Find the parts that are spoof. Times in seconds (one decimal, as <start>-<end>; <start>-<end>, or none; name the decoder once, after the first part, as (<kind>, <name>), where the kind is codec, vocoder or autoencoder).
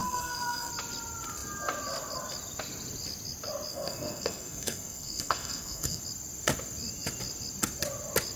0.0-0.7 (codec, SNAC); 3.7-6.0